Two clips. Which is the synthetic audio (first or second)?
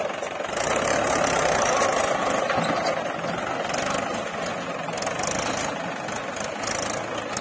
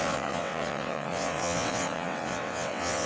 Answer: second